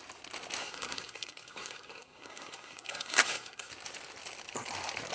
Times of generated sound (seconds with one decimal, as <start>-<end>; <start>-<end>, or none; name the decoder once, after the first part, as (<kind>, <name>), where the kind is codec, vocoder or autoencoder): 0.6-3.7 (codec, SNAC)